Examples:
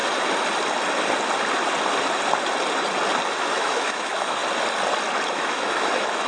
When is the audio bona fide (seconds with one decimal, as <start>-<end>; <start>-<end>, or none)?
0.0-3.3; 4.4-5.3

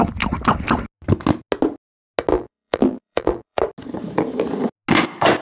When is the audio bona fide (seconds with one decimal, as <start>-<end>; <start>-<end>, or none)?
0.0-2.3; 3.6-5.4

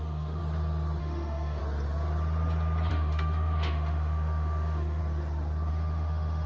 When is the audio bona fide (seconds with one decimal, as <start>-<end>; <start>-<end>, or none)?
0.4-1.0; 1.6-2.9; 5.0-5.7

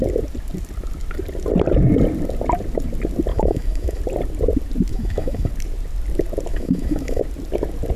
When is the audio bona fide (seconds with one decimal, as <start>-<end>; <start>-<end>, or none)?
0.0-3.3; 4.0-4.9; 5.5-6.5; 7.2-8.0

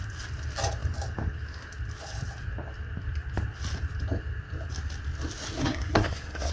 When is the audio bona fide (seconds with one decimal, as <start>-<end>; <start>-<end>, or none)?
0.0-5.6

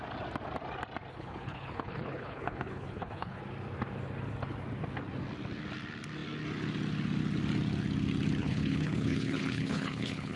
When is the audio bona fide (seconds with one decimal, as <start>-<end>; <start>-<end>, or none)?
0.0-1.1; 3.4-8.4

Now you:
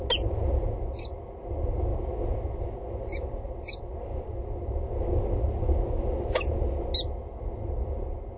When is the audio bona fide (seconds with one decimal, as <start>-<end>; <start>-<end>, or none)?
0.0-8.4

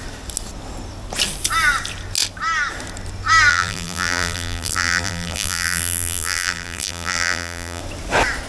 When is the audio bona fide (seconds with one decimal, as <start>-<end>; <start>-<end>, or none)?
0.0-3.5; 7.8-8.5